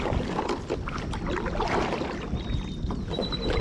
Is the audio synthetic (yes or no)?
no